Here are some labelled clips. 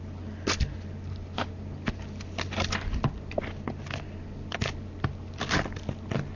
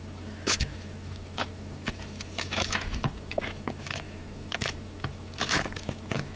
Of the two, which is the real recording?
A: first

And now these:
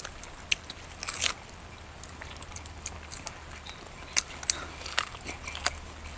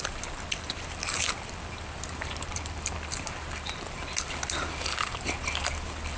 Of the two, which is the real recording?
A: first